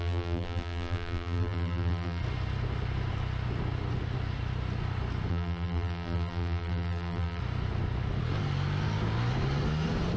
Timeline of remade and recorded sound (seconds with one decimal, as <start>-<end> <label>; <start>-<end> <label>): 0.0-2.2 remade; 2.2-5.3 recorded; 5.3-7.4 remade; 7.4-10.2 recorded